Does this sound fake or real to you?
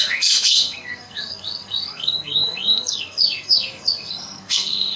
fake